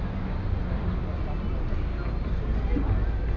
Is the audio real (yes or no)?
yes